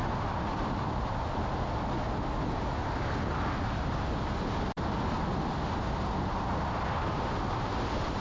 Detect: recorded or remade recorded